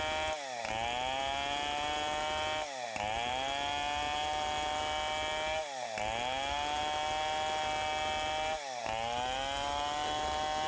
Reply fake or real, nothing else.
real